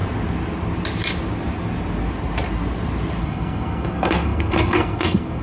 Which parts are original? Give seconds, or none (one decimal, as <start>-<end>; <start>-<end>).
0.0-3.2